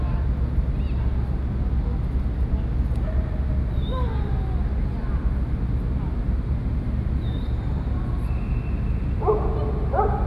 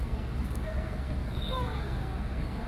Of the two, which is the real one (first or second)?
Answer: first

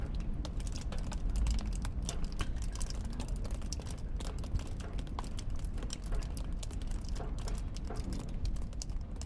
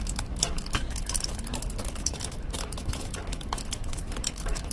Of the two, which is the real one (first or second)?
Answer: first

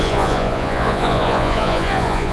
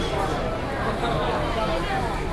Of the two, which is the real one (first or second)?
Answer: second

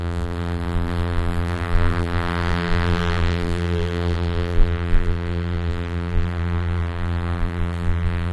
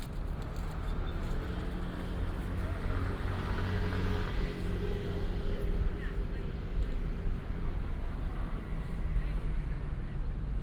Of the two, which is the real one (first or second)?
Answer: second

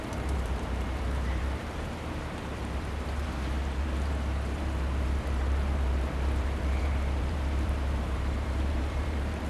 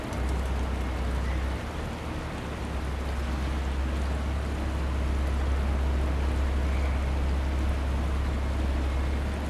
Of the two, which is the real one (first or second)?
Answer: second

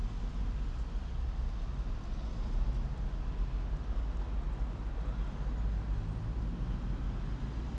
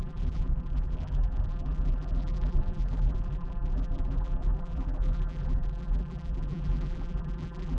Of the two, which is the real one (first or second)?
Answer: first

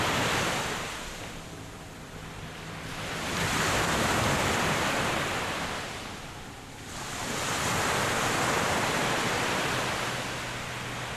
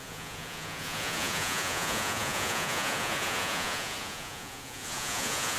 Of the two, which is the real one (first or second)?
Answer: first